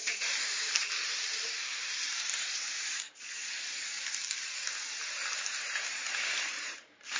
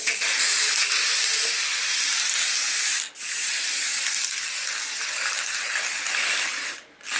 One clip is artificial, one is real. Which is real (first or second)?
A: second